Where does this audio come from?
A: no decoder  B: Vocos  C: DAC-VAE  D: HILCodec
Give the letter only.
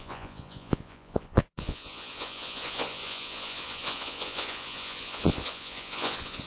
B